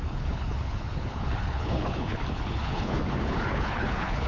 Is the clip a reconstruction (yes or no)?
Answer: yes